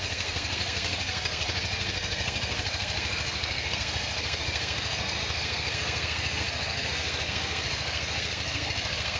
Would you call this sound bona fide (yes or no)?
no